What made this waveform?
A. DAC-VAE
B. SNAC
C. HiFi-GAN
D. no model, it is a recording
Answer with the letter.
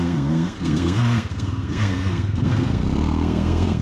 B